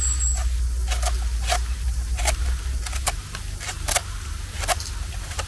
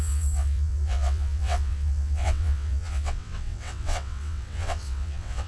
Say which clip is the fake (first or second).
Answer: second